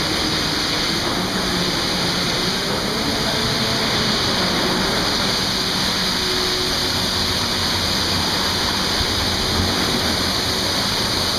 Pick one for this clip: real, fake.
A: real